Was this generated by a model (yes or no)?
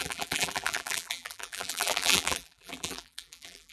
yes